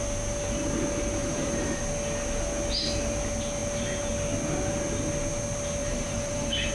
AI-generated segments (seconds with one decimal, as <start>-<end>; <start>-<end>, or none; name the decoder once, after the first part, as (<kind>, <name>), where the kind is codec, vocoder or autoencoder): 1.2-1.8 (vocoder, BigVGAN v2); 5.8-6.7